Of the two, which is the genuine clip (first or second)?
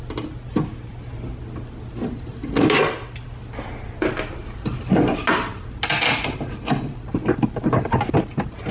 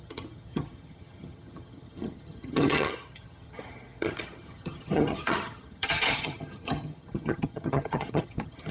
first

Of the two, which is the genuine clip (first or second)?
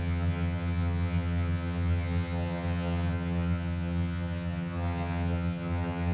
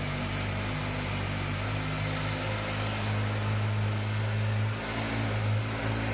second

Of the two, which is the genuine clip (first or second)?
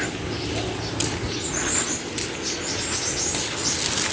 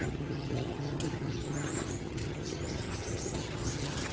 first